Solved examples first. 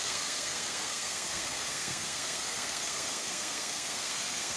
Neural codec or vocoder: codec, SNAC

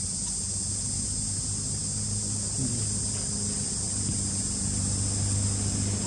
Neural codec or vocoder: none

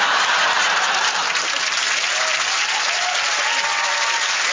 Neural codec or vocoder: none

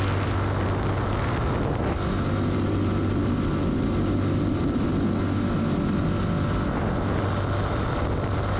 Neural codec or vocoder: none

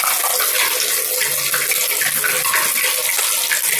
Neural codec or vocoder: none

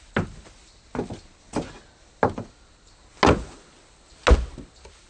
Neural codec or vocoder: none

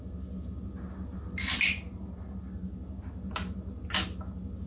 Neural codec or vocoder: none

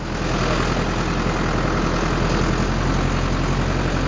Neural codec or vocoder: none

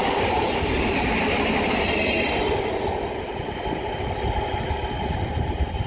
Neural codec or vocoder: none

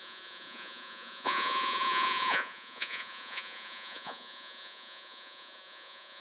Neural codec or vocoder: vocoder, Vocos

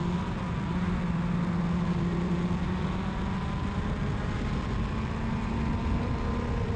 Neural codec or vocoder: none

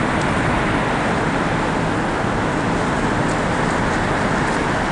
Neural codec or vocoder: none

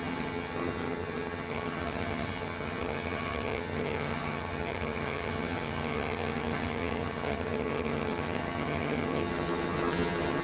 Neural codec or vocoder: vocoder, HiFi-GAN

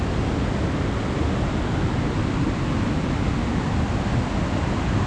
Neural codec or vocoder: none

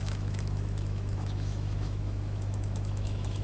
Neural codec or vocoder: autoencoder, DAC-VAE